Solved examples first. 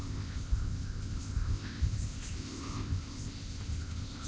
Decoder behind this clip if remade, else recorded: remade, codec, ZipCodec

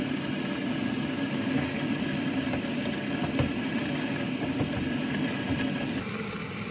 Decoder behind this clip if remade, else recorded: recorded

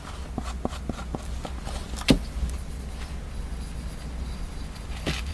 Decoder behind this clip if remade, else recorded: recorded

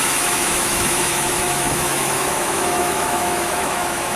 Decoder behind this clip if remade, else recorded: remade, autoencoder, DAC-VAE